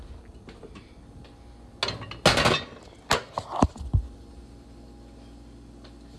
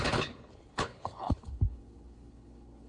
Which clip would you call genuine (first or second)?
first